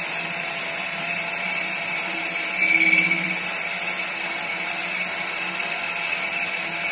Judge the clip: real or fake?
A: real